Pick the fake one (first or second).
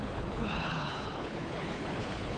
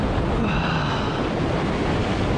first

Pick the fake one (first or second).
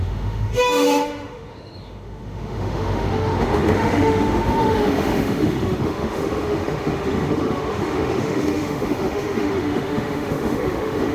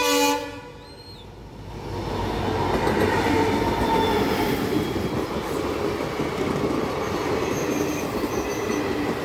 first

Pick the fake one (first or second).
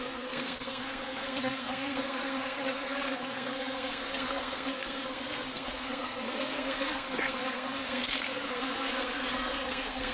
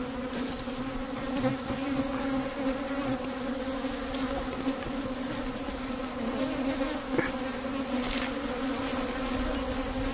first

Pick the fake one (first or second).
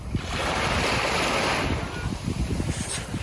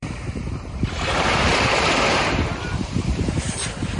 second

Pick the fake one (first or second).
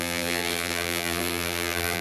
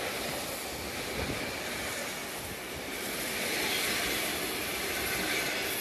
first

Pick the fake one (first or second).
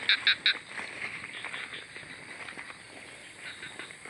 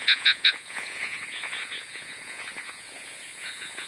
second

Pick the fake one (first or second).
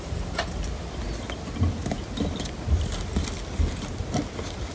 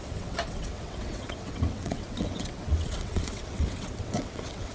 second